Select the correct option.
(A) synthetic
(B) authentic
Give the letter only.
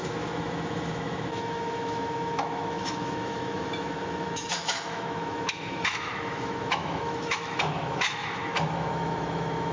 A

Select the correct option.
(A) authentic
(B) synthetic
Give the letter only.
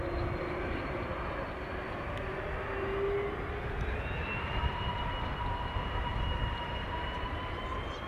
A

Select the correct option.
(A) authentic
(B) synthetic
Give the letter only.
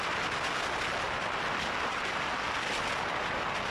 A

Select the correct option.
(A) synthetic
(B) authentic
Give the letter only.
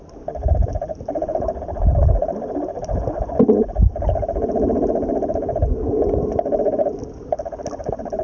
B